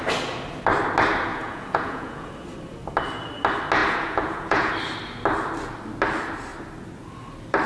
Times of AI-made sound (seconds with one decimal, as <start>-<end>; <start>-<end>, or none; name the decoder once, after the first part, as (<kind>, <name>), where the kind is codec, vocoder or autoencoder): 1.3-2.3 (vocoder, Vocos); 3.8-4.7